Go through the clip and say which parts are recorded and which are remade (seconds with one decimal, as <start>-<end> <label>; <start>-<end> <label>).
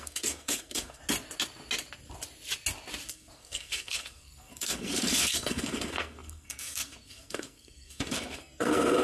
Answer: 0.0-1.0 remade; 1.0-3.1 recorded; 3.1-9.0 remade